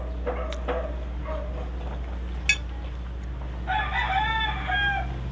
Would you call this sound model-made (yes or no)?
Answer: no